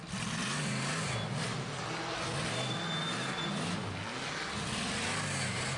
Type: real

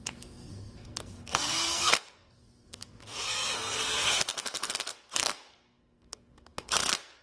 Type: fake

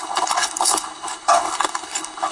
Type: fake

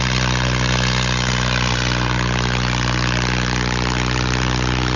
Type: real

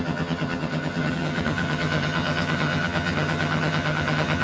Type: fake